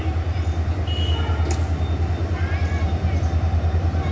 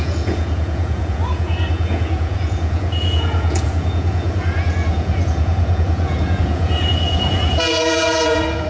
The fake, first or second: second